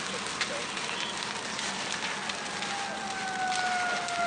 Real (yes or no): yes